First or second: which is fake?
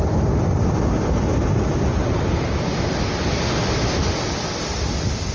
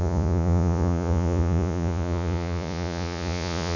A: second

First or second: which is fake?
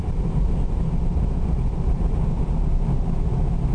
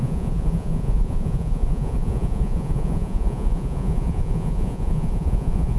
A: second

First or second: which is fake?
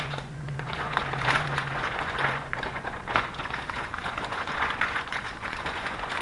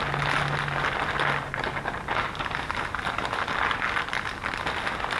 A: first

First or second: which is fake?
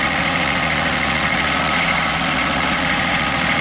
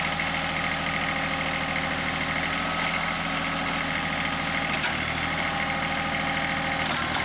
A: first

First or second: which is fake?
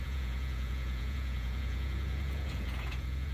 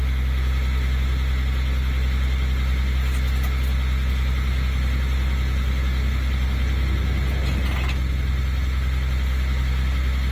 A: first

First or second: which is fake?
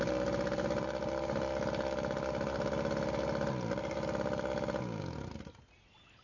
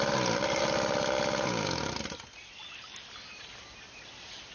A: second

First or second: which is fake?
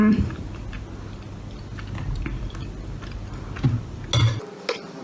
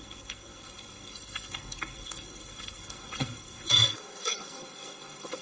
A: second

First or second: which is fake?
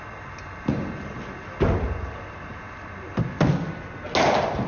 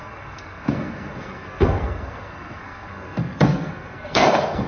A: second